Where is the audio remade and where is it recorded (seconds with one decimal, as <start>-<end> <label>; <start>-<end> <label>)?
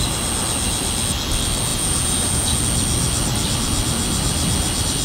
0.0-1.7 recorded; 1.7-2.6 remade; 2.6-5.0 recorded